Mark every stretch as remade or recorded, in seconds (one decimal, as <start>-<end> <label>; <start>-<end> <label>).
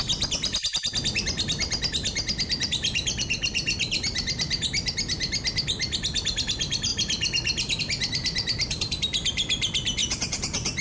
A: 0.0-10.8 recorded